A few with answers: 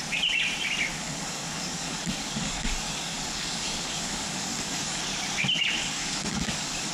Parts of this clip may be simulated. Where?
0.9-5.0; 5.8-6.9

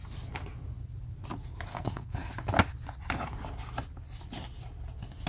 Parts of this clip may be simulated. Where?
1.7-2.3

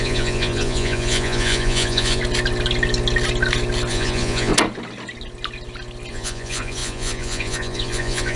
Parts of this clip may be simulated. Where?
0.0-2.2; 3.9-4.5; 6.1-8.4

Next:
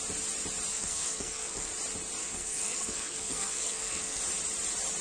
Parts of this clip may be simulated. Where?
0.7-1.7; 2.2-4.2

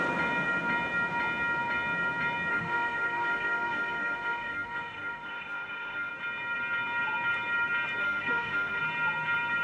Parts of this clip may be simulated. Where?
2.5-6.1; 8.0-8.8